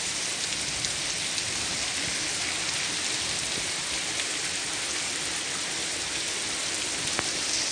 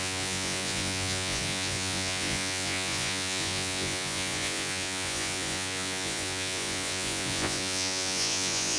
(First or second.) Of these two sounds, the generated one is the second